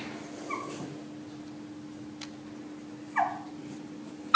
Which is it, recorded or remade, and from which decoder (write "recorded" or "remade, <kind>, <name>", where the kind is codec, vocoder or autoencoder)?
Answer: recorded